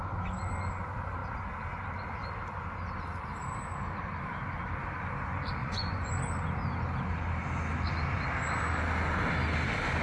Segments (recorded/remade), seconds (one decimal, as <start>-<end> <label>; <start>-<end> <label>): 0.0-5.6 recorded; 5.6-6.1 remade; 6.1-10.0 recorded